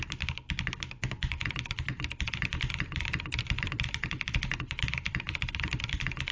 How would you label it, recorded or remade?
remade